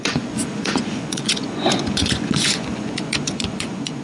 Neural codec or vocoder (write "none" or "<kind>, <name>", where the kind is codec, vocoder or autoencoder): vocoder, Vocos